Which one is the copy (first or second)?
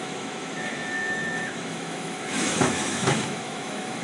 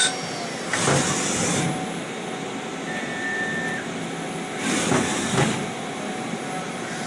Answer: first